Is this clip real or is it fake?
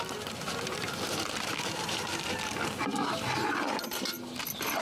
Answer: real